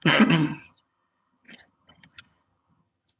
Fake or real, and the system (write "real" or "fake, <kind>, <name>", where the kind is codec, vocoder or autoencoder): fake, vocoder, HiFi-GAN